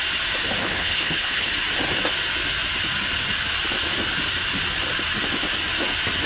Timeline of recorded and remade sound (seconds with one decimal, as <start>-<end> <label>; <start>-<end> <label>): 0.0-0.6 recorded; 0.6-1.5 remade; 1.5-6.3 recorded